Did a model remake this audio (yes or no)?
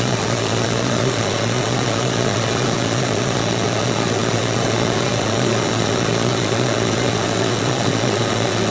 yes